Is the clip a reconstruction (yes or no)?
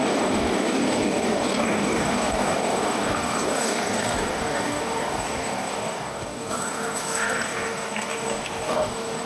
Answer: yes